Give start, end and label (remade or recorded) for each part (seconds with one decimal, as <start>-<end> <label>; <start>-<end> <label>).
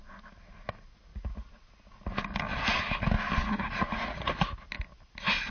0.0-1.1 recorded; 1.1-1.7 remade; 1.7-3.4 recorded; 3.4-4.3 remade; 4.3-5.5 recorded